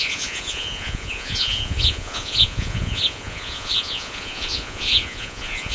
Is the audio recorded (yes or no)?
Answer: no